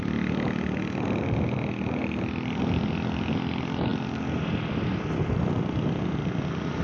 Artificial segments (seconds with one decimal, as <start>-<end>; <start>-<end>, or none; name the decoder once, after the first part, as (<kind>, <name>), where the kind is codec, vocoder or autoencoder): 2.0-2.6 (vocoder, BigVGAN v2); 3.9-6.8